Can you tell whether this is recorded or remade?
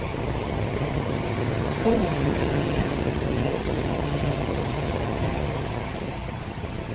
remade